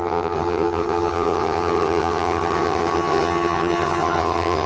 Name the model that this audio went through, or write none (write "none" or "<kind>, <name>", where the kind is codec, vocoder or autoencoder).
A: vocoder, HiFi-GAN